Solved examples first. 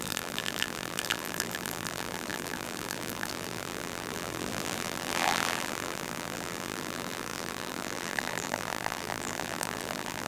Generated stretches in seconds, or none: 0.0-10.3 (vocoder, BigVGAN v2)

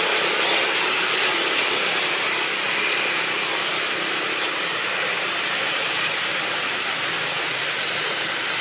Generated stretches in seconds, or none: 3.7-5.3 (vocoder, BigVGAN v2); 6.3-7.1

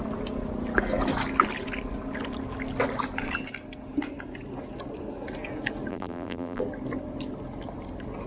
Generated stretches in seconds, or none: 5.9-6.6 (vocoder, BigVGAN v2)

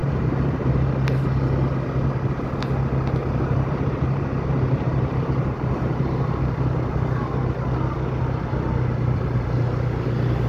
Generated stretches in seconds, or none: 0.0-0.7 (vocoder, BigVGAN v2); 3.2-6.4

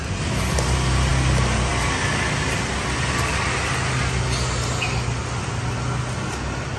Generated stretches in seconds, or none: none

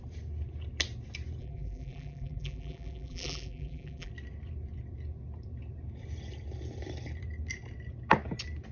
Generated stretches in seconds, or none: 1.4-4.1 (vocoder, BigVGAN v2)